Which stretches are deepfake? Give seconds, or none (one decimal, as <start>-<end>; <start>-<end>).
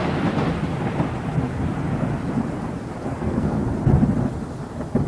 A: 3.1-3.6